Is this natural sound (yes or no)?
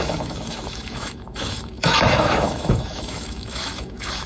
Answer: no